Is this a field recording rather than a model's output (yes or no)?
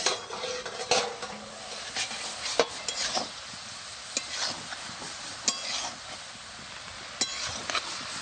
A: yes